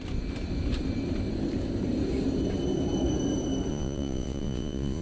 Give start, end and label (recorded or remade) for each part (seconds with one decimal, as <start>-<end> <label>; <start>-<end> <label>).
0.0-3.7 recorded; 3.7-5.0 remade